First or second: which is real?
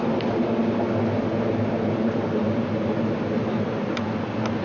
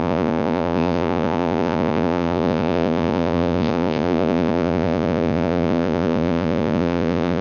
first